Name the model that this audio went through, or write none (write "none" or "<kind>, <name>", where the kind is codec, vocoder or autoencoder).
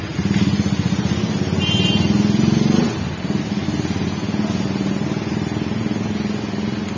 none